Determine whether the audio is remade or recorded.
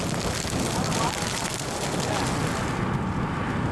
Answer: recorded